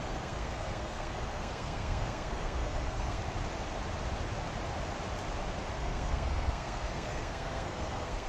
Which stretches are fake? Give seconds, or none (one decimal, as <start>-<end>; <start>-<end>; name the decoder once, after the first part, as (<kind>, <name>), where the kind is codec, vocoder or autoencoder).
0.0-3.2 (codec, SNAC); 5.7-8.3